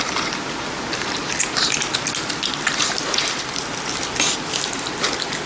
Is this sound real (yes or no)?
yes